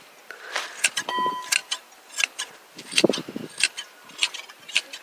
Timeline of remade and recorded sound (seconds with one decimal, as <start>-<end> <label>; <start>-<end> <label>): 0.0-5.0 recorded